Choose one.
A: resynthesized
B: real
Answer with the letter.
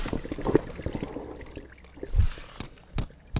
B